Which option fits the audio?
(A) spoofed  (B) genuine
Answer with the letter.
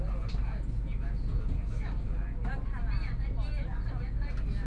B